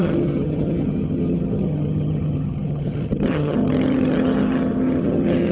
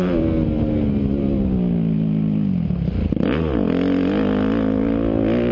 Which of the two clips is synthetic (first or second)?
first